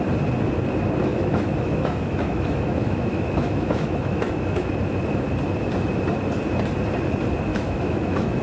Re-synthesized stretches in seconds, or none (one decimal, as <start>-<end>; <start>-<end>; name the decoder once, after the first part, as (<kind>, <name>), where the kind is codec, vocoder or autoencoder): 1.1-4.7 (autoencoder, DAC-VAE); 7.5-8.4